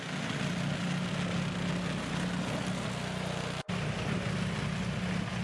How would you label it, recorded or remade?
recorded